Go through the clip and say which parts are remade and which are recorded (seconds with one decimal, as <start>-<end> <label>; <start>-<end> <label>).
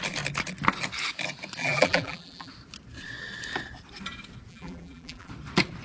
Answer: 0.0-1.6 recorded; 1.6-2.5 remade; 2.5-4.5 recorded; 4.5-5.3 remade; 5.3-5.8 recorded